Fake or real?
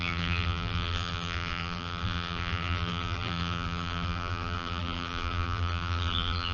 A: fake